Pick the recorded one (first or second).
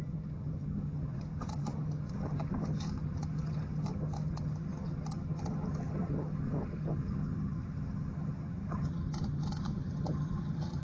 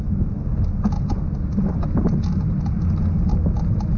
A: second